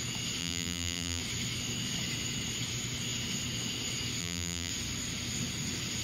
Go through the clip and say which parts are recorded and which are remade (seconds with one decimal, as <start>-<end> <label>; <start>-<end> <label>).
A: 0.0-0.4 recorded; 0.4-1.2 remade; 1.2-4.2 recorded; 4.2-4.7 remade; 4.7-6.0 recorded